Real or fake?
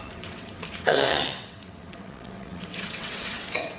fake